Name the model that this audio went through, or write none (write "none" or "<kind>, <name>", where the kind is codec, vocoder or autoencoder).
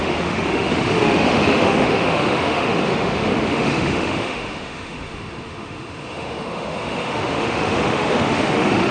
autoencoder, DAC-VAE